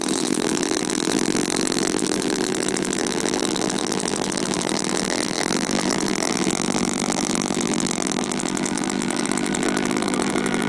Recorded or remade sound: remade